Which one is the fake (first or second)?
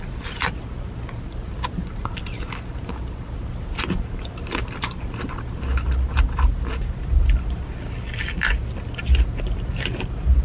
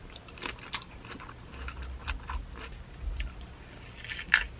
first